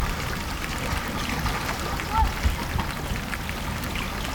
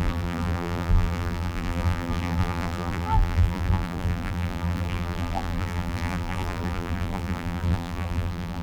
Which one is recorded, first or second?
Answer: first